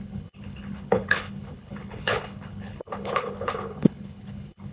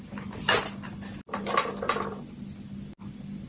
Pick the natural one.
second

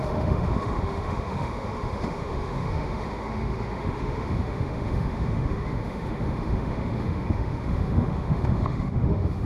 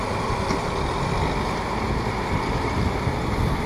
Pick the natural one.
second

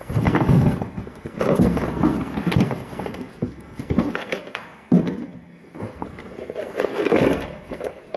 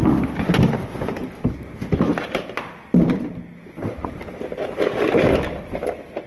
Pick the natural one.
second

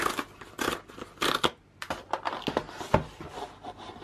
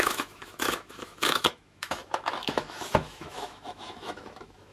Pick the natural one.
first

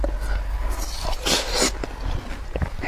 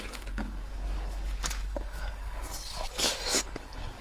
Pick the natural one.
first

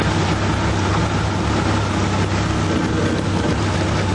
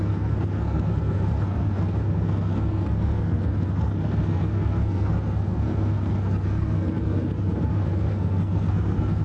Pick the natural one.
first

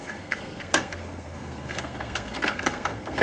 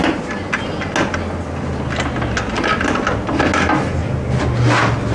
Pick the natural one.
second